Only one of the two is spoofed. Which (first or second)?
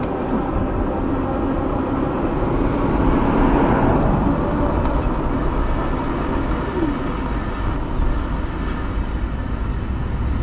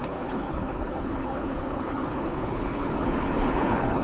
second